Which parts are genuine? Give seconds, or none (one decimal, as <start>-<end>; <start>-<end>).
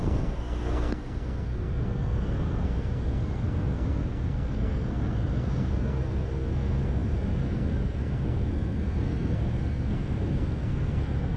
none